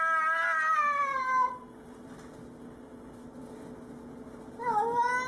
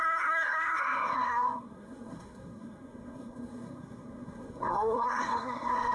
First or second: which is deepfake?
second